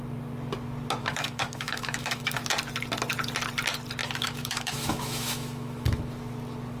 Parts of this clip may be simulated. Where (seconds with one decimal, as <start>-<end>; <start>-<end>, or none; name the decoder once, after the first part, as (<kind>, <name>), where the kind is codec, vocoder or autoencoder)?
1.0-2.4 (autoencoder, DAC-VAE); 4.0-6.0

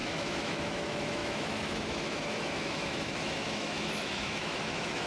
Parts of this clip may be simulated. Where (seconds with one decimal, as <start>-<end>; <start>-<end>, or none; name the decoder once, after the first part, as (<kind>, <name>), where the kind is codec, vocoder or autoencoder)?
0.0-5.1 (autoencoder, DAC-VAE)

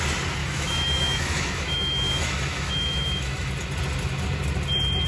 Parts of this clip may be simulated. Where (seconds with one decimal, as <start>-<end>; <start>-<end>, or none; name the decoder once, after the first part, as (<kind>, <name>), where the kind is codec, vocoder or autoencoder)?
0.4-3.5 (autoencoder, DAC-VAE)

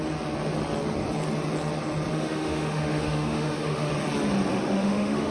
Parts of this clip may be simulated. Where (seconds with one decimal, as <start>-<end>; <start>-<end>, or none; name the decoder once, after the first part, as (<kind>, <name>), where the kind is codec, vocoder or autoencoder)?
2.1-3.9 (autoencoder, DAC-VAE); 4.5-5.3

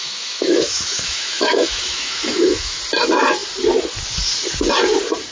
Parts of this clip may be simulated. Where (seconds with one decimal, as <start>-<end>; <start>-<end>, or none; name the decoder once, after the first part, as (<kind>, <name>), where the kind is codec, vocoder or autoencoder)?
0.0-2.8 (autoencoder, DAC-VAE)

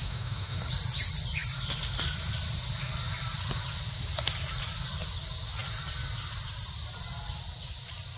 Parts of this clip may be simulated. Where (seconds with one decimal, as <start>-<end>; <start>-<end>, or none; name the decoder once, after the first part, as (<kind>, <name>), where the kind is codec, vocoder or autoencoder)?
0.0-0.6 (autoencoder, DAC-VAE)

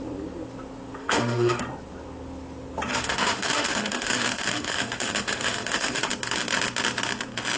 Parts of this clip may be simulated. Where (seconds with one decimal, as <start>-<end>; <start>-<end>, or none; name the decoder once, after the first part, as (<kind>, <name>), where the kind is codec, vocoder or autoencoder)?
1.0-1.6 (autoencoder, DAC-VAE); 2.9-6.1

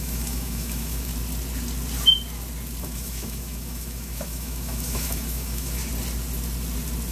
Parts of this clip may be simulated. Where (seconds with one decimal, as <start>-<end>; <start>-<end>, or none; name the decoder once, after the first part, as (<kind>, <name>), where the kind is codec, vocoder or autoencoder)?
0.0-1.1 (autoencoder, DAC-VAE); 2.8-5.8